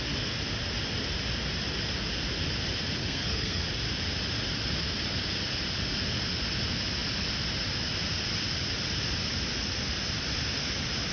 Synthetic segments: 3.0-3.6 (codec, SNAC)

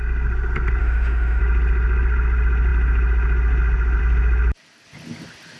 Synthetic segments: 0.8-1.4 (autoencoder, DAC-VAE)

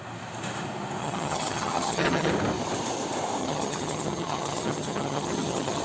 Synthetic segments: 1.0-2.3 (vocoder, HiFi-GAN); 3.4-5.8

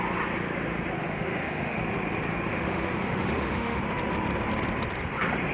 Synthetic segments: 1.0-1.8 (autoencoder, DAC-VAE); 2.5-3.8

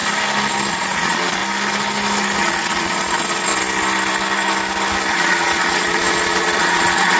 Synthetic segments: 0.7-1.4 (vocoder, Vocos); 2.4-3.5; 5.1-7.2

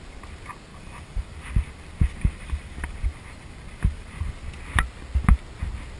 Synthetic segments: 0.7-4.3 (vocoder, BigVGAN v2)

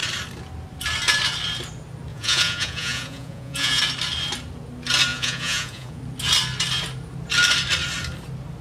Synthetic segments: 2.1-3.8 (vocoder, Vocos); 5.1-6.0